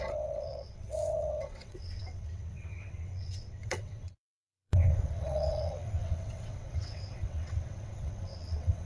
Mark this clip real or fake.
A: fake